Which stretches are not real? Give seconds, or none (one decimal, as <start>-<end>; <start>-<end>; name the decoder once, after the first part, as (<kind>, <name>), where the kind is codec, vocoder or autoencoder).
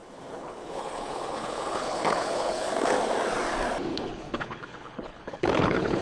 0.0-2.7 (codec, HILCodec); 3.9-6.0